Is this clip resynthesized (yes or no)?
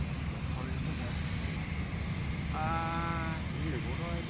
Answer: no